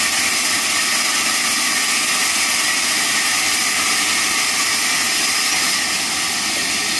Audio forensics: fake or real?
real